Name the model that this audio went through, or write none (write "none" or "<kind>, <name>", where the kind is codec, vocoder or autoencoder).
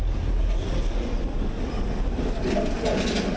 none